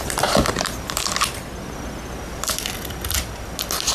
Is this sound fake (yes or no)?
no